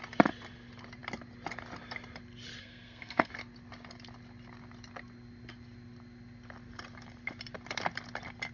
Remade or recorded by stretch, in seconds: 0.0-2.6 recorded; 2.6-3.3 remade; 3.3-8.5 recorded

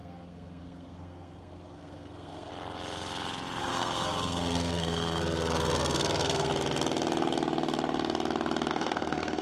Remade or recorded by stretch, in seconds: 0.0-2.5 remade; 2.5-3.6 recorded; 3.6-6.5 remade; 6.5-8.7 recorded; 8.7-9.4 remade

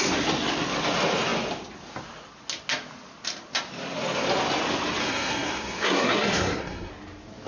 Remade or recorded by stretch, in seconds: 0.0-5.0 recorded; 5.0-6.9 remade; 6.9-7.5 recorded

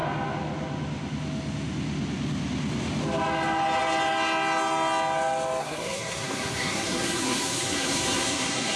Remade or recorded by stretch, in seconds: 0.0-5.6 recorded; 5.6-8.8 remade